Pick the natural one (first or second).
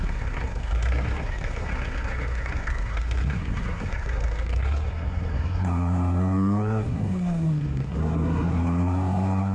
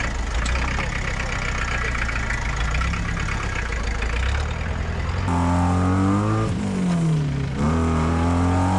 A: second